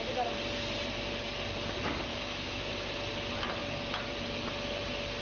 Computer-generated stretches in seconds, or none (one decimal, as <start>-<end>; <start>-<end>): 2.1-2.7